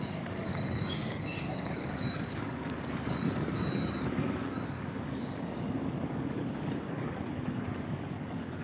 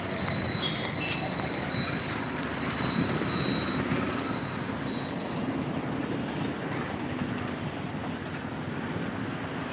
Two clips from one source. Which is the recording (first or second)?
second